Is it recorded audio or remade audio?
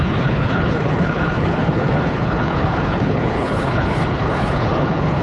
remade